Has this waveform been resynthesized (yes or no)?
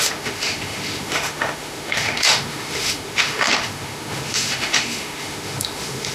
yes